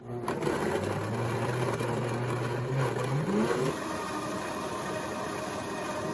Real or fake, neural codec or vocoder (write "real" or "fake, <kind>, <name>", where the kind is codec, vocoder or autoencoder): real